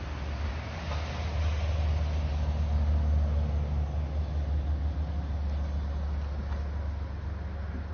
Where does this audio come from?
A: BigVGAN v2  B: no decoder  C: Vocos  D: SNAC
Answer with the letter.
B